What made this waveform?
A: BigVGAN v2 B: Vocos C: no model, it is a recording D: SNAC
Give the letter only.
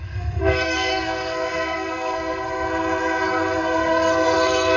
D